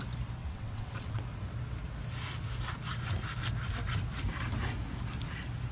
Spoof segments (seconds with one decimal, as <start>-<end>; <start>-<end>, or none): 0.4-1.2